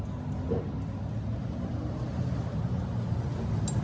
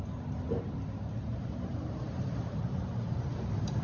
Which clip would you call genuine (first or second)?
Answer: first